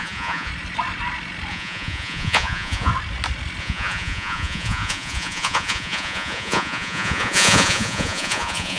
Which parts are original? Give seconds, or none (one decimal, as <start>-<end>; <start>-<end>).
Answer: 0.5-1.5; 2.9-3.6